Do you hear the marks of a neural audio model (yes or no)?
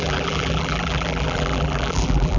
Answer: yes